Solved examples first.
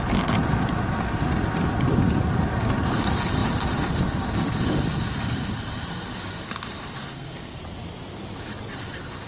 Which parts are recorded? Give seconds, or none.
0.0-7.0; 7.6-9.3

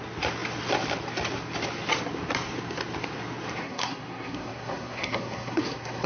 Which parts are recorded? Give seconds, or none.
0.0-3.6

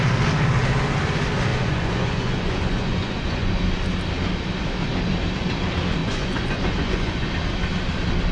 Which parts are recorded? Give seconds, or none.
0.0-1.5; 3.6-6.0; 7.3-8.3